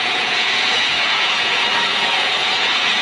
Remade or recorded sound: remade